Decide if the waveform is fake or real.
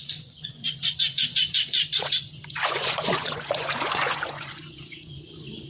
fake